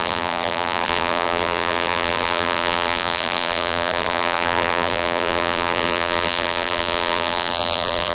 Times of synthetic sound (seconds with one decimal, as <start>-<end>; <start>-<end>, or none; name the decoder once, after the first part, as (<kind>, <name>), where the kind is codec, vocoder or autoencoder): 0.0-8.1 (vocoder, BigVGAN v2)